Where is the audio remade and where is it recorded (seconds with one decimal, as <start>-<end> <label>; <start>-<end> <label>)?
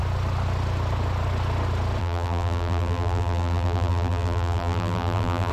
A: 0.0-2.0 recorded; 2.0-5.5 remade